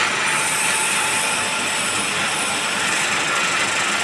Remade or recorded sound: recorded